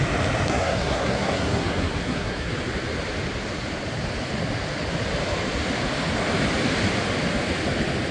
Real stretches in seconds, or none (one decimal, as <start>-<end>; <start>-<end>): 0.0-0.5; 2.5-8.1